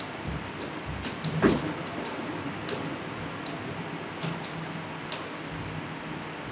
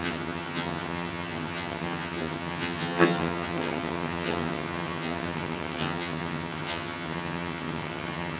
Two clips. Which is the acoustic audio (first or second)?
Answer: first